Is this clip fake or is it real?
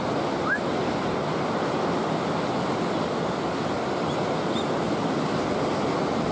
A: real